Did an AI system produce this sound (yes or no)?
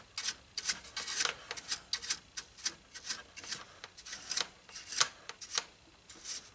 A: no